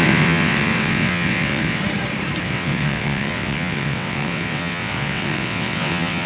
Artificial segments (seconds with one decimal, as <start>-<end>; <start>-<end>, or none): 0.0-1.8; 2.4-6.3